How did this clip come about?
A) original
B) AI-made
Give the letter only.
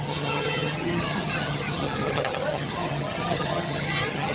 B